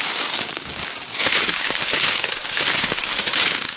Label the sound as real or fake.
fake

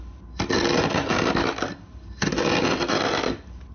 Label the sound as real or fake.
real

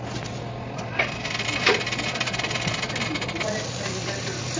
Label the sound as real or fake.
real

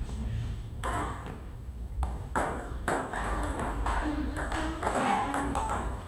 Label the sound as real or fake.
fake